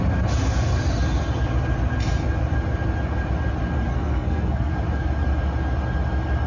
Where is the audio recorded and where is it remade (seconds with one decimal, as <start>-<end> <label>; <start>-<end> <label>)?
0.0-3.9 recorded; 3.9-4.7 remade; 4.7-6.5 recorded